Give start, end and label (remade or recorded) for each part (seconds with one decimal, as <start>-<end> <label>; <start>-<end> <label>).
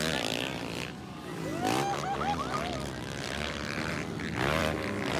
0.0-5.2 recorded